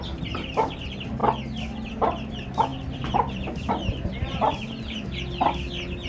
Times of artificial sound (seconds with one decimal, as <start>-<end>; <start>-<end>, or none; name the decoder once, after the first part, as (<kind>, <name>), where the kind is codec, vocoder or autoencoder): 0.0-1.2 (vocoder, BigVGAN v2); 1.9-6.1